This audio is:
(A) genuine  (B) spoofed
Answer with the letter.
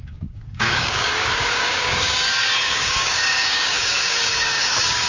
B